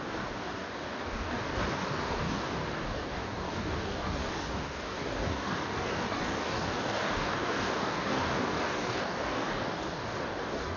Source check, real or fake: fake